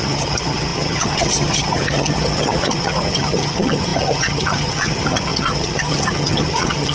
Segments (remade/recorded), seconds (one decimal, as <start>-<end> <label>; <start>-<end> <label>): 0.0-6.9 remade